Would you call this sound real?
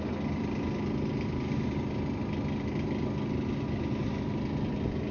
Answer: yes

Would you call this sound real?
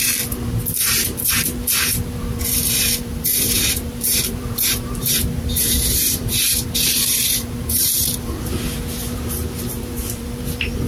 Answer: no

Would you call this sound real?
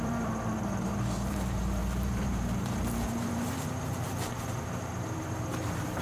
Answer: no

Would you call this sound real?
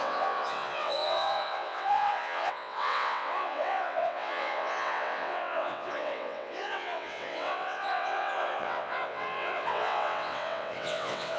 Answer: no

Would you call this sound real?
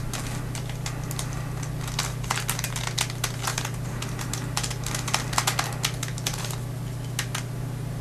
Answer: yes